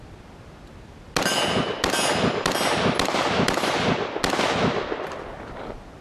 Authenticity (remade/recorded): recorded